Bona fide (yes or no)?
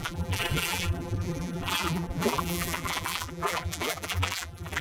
no